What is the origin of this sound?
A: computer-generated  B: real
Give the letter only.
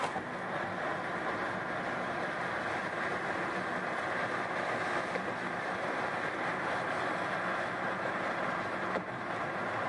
B